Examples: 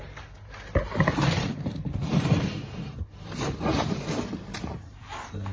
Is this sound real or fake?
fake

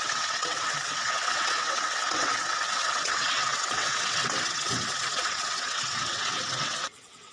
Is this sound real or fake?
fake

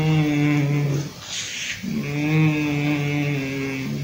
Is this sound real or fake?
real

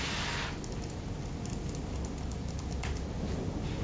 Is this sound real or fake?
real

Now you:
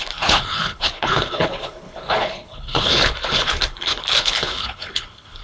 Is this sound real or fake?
fake